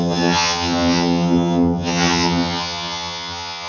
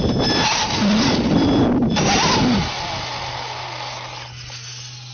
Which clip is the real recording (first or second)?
second